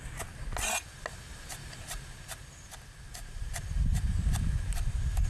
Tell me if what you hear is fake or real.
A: real